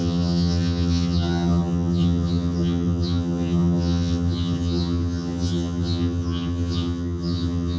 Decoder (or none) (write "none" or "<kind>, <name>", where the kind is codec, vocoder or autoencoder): vocoder, HiFi-GAN